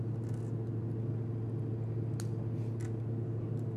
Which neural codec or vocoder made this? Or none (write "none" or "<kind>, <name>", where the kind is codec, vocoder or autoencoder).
none